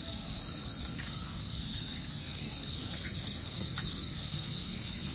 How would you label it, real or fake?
fake